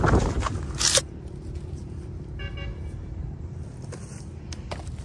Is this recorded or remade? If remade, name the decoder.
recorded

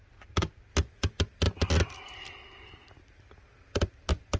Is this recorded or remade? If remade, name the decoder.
recorded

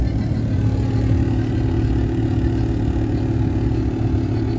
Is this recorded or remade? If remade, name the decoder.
recorded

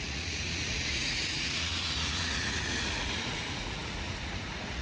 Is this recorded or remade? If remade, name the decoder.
remade, vocoder, Vocos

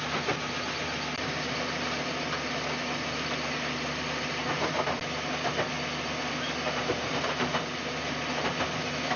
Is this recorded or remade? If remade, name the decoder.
recorded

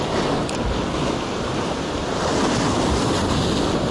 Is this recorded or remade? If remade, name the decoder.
recorded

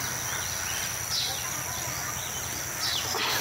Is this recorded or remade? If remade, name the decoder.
recorded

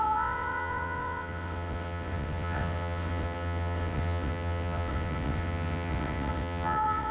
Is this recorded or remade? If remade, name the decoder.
remade, vocoder, WaveNeXt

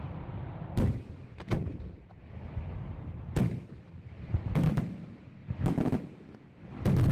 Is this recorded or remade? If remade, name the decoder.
remade, vocoder, BigVGAN v2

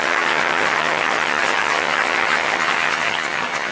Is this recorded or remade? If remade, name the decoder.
remade, vocoder, HiFi-GAN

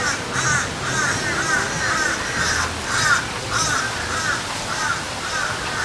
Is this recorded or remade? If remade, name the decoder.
recorded